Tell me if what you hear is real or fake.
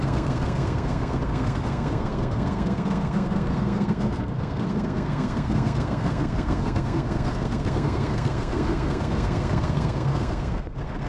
fake